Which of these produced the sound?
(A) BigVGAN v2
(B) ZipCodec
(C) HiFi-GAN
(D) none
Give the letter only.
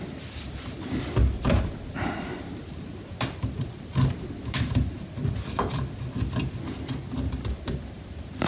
A